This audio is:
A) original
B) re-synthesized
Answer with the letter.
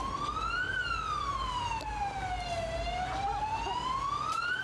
A